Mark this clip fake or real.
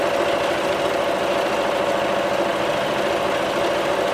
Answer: real